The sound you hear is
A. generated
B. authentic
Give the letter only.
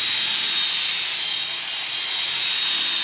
B